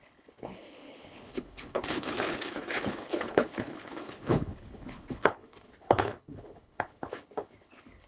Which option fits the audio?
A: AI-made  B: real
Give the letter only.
A